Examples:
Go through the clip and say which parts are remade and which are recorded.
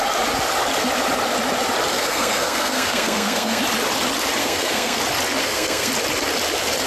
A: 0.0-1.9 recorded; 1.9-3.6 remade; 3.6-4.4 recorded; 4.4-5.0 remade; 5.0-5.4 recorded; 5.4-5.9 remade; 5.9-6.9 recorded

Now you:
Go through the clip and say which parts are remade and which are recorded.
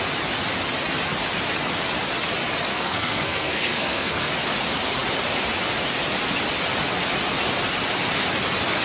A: 0.0-2.7 recorded; 2.7-4.3 remade; 4.3-8.8 recorded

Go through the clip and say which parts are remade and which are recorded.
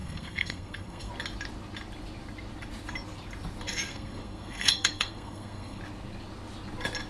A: 0.0-1.1 remade; 1.1-3.9 recorded; 3.9-5.8 remade; 5.8-7.1 recorded